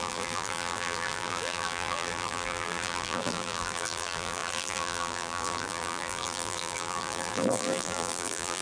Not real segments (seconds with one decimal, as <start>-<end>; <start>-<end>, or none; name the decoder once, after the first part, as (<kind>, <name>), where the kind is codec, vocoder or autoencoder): 0.0-8.6 (vocoder, BigVGAN v2)